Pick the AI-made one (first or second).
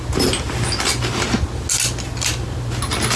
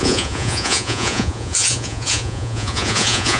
second